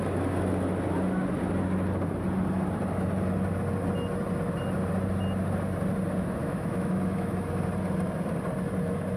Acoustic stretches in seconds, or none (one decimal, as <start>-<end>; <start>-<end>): 0.0-6.4; 7.5-9.2